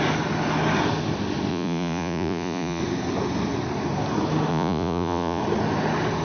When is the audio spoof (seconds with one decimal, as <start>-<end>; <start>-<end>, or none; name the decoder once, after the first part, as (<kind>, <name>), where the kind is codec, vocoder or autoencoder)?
1.5-2.8 (vocoder, Vocos); 4.5-5.4